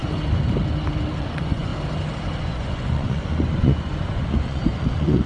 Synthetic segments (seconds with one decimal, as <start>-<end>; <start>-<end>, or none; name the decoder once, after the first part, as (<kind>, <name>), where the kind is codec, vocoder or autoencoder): 1.2-1.7 (vocoder, Vocos); 2.4-5.3